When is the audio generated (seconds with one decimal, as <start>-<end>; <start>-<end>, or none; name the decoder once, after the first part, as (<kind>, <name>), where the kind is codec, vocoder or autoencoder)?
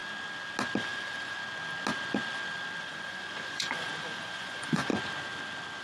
0.8-1.4 (vocoder, Vocos); 2.8-4.9